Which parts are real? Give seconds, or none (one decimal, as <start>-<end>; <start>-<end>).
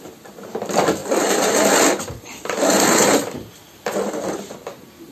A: 0.0-1.0; 4.1-5.1